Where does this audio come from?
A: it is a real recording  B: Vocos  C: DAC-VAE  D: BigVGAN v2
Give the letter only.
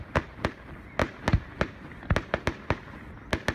A